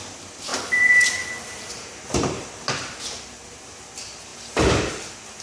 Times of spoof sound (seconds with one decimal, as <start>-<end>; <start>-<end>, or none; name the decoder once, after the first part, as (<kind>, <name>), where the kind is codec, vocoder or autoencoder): 0.5-1.3 (vocoder, BigVGAN v2)